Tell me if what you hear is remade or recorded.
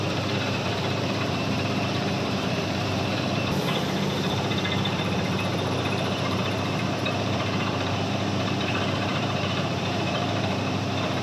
remade